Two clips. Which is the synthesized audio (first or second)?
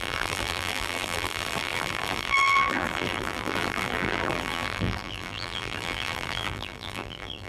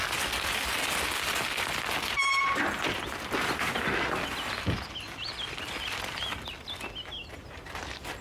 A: first